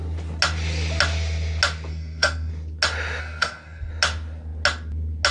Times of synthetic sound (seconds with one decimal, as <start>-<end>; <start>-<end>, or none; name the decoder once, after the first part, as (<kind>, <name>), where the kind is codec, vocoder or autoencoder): 1.9-2.5 (codec, SNAC); 3.2-3.9